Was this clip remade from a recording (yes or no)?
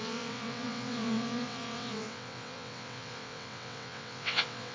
yes